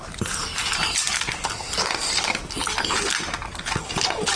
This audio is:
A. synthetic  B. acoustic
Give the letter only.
B